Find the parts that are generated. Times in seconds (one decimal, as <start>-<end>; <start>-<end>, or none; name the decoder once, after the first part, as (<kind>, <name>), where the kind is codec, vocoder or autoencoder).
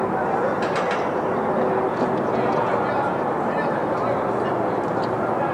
none